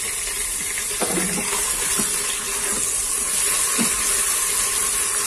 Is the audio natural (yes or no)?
yes